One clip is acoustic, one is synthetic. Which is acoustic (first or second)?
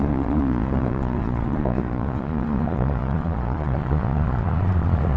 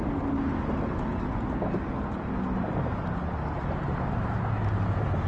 second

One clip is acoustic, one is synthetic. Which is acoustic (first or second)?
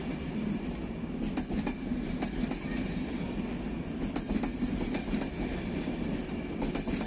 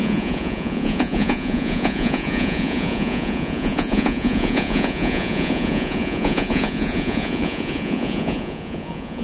first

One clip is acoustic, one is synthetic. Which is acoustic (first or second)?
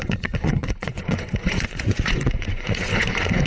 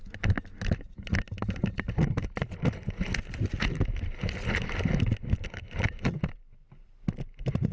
second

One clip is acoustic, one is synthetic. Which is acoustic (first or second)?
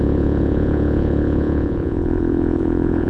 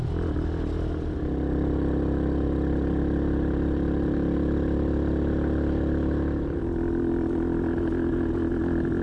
second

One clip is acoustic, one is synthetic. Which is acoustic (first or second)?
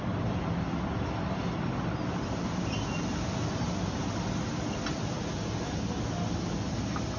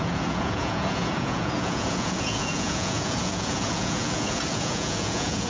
first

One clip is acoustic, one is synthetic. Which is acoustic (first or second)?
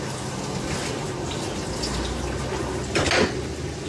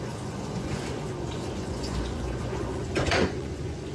first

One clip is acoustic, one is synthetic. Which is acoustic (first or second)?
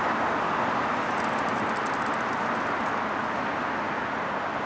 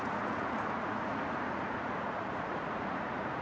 first